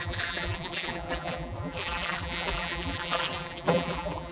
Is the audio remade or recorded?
remade